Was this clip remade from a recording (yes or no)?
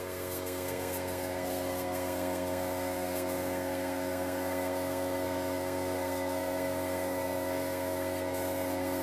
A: yes